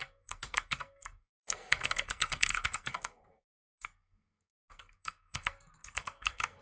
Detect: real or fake fake